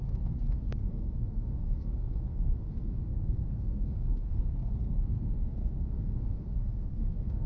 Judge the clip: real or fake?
fake